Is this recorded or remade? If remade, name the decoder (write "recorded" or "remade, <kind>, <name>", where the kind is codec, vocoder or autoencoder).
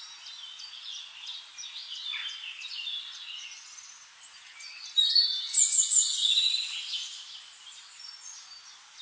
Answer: recorded